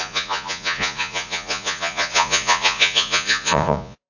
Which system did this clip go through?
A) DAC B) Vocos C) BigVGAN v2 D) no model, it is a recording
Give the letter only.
B